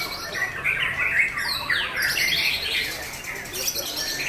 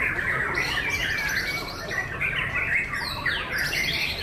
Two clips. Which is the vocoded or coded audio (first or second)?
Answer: second